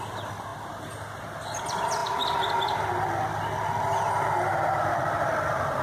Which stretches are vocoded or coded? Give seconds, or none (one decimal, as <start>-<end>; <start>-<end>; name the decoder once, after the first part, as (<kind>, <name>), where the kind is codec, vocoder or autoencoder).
0.5-1.2 (vocoder, BigVGAN v2); 2.0-2.5